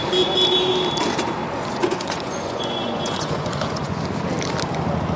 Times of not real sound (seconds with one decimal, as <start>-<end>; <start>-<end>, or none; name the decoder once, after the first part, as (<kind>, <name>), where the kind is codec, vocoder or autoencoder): 1.8-4.0 (vocoder, Vocos)